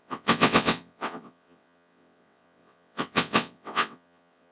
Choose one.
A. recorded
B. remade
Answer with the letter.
B